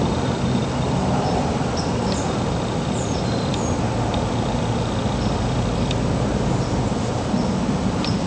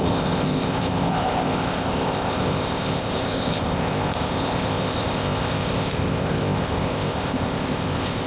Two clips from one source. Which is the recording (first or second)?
first